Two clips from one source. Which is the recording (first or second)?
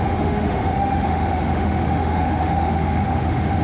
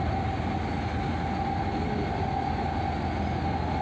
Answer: second